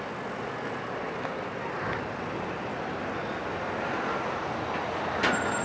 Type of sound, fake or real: real